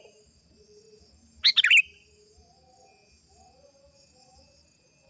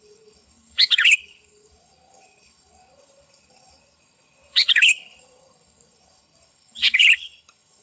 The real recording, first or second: first